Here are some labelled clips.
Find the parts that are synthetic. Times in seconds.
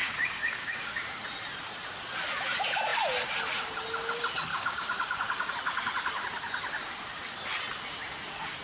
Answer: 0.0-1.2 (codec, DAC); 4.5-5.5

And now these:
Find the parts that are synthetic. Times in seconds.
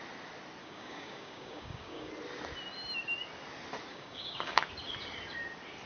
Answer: 0.6-2.1 (codec, DAC); 3.9-4.6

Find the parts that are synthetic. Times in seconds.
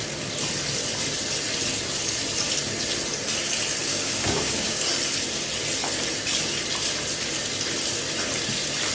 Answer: 3.9-4.9 (codec, DAC)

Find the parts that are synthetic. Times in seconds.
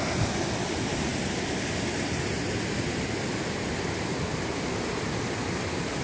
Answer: none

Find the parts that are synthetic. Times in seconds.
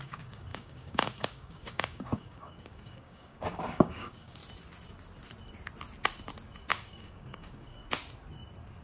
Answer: 0.0-4.4 (codec, DAC); 6.7-7.8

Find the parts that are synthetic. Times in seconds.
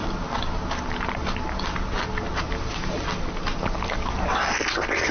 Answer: none